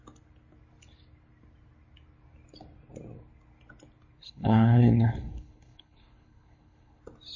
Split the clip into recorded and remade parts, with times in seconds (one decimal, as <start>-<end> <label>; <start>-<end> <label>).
0.0-4.2 recorded; 4.2-7.0 remade; 7.0-7.4 recorded